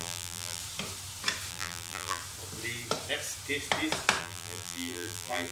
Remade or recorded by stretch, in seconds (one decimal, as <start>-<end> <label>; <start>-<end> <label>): 0.0-0.6 remade; 0.6-1.5 recorded; 1.5-2.2 remade; 2.2-4.2 recorded; 4.2-5.5 remade